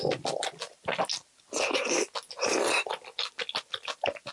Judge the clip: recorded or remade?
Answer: recorded